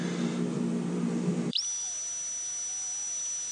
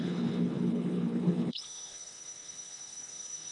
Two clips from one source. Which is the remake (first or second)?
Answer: second